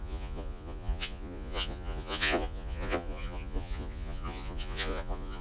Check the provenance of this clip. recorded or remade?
remade